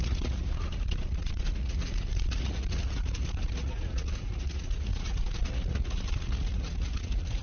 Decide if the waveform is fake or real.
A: fake